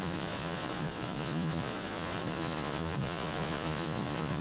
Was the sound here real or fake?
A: fake